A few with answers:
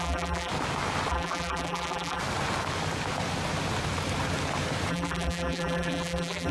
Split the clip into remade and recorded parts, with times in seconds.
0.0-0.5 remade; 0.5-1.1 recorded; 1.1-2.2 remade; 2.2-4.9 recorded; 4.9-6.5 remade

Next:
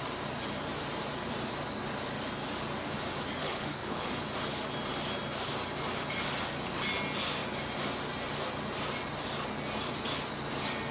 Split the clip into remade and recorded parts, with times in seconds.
0.0-3.4 recorded; 3.4-4.1 remade; 4.1-10.9 recorded

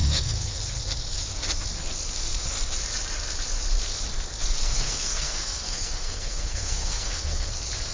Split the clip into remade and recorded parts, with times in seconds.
0.0-0.6 remade; 0.6-4.6 recorded; 4.6-7.5 remade; 7.5-7.9 recorded

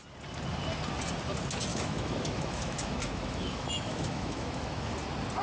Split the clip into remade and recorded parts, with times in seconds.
0.0-1.7 recorded; 1.7-4.9 remade; 4.9-5.4 recorded